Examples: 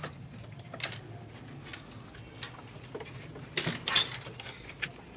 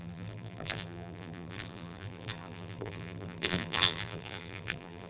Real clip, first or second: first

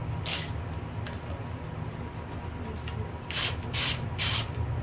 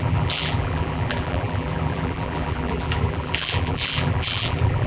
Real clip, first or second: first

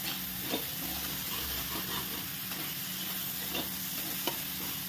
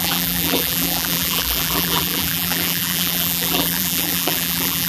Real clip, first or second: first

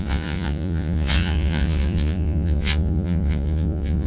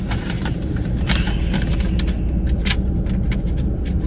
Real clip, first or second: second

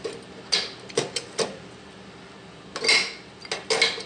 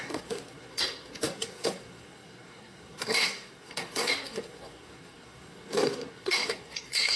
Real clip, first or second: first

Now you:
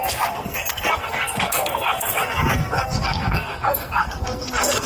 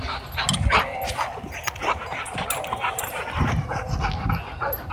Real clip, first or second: second